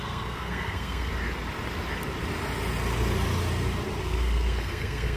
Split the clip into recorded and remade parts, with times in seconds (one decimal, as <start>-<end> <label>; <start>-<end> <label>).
0.0-1.1 remade; 1.1-4.0 recorded; 4.0-5.2 remade